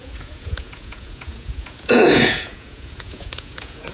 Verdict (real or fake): fake